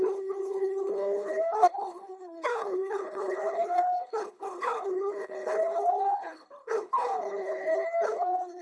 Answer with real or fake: fake